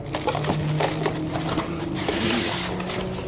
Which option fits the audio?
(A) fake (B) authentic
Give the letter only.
B